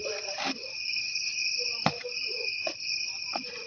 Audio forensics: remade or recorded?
remade